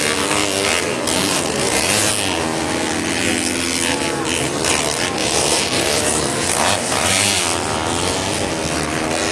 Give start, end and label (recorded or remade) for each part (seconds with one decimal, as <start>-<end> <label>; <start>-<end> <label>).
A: 0.0-1.2 recorded; 1.2-2.1 remade; 2.1-5.2 recorded; 5.2-7.4 remade; 7.4-9.3 recorded